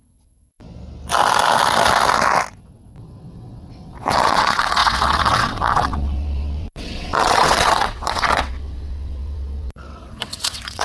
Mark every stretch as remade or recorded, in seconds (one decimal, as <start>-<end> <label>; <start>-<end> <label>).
0.0-0.6 remade; 0.6-2.5 recorded; 2.5-10.8 remade